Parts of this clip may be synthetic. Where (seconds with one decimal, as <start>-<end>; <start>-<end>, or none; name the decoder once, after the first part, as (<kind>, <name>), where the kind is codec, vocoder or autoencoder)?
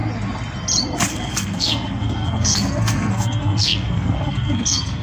1.1-5.0 (codec, SNAC)